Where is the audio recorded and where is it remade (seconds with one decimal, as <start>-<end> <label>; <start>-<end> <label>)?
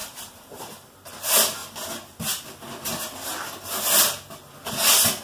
0.0-1.1 remade; 1.1-5.2 recorded